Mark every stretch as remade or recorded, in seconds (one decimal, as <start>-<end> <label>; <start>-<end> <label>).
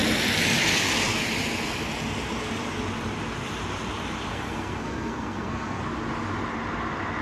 0.0-4.3 recorded; 4.3-5.8 remade; 5.8-7.2 recorded